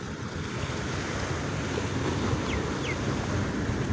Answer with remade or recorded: recorded